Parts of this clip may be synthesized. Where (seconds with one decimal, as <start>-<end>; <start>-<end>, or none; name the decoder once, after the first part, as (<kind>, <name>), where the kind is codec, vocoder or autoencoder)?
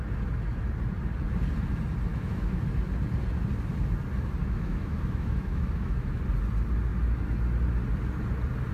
2.1-2.6 (autoencoder, DAC-VAE); 4.4-6.2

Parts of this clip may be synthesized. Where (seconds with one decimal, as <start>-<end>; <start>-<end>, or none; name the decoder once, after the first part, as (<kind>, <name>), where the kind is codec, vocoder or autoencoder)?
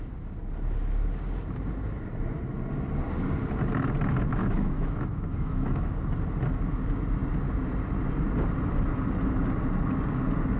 4.4-5.9 (autoencoder, DAC-VAE)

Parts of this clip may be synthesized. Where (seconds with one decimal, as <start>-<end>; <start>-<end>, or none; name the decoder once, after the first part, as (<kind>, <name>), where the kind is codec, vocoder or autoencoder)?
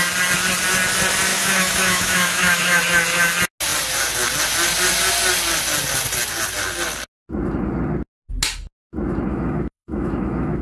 1.3-2.8 (autoencoder, DAC-VAE); 9.3-10.6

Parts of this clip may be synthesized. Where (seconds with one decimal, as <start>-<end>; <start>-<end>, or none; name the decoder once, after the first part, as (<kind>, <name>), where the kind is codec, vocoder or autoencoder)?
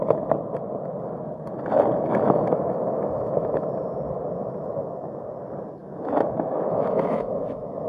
2.1-3.7 (autoencoder, DAC-VAE); 4.8-5.3; 5.8-7.9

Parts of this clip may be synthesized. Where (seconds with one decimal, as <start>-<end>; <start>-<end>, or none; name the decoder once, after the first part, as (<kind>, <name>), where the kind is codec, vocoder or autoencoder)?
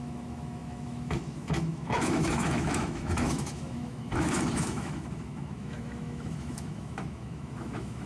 0.0-8.1 (autoencoder, DAC-VAE)